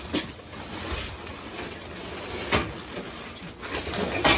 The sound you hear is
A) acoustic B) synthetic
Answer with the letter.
A